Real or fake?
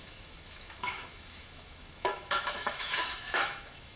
fake